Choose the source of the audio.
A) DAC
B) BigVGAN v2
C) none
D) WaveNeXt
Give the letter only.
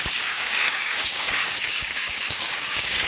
A